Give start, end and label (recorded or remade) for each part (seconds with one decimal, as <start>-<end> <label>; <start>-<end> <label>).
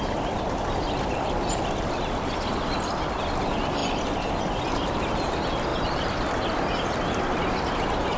0.0-8.2 recorded